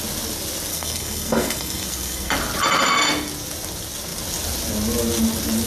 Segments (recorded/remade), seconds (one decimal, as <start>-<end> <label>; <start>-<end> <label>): 0.0-0.7 recorded; 0.7-2.3 remade; 2.3-5.7 recorded